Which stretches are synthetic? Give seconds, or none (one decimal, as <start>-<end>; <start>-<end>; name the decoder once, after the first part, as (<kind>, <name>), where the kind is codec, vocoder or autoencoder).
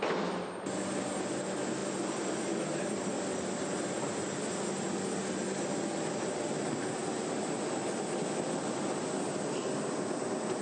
none